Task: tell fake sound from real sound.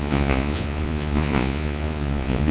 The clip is fake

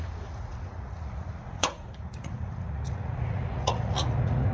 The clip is fake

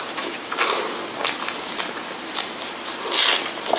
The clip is real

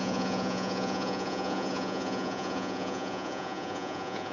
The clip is fake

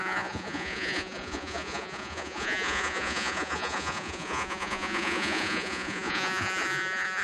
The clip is fake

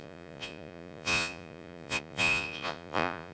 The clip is fake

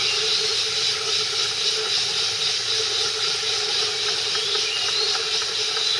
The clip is real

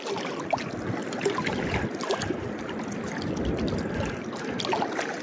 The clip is real